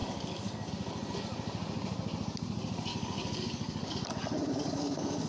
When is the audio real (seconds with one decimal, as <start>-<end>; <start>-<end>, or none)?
0.7-2.9; 3.9-4.4